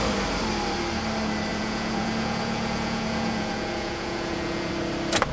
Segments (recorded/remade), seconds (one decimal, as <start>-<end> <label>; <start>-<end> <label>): 0.0-1.5 recorded; 1.5-4.7 remade; 4.7-5.3 recorded